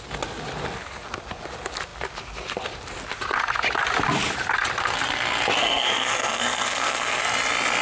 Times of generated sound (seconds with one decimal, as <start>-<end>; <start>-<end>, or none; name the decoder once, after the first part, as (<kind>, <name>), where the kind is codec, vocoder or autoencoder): 5.6-7.2 (codec, SNAC)